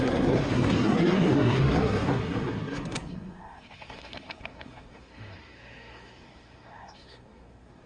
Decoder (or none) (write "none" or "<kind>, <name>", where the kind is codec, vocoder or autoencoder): codec, SNAC